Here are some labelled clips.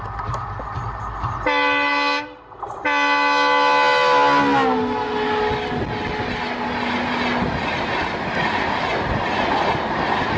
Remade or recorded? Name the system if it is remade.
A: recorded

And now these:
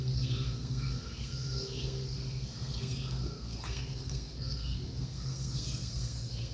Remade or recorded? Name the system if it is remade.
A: remade, codec, SNAC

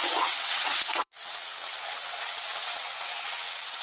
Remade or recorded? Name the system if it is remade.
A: remade, vocoder, WaveNeXt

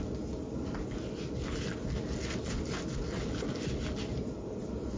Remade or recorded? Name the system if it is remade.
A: recorded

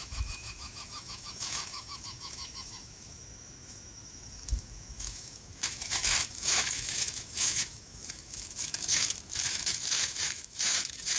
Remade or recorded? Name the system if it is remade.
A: remade, autoencoder, DAC-VAE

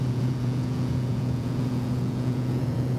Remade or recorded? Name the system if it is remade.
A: remade, vocoder, Vocos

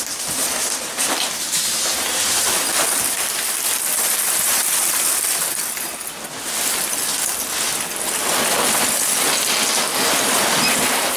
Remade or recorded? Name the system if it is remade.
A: recorded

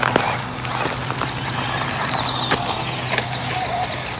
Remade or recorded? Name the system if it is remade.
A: recorded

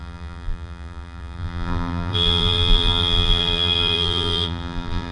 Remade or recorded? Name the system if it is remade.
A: remade, vocoder, BigVGAN v2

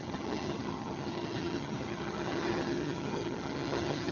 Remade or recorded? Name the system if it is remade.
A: remade, vocoder, HiFi-GAN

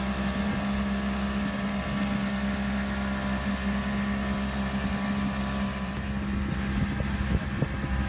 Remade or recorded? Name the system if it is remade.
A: recorded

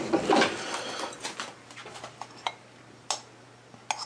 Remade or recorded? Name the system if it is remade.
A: recorded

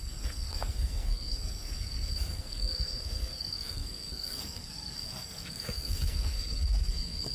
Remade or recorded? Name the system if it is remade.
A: remade, codec, SNAC